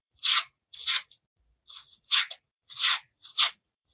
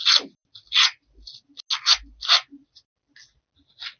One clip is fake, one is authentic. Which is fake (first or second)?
first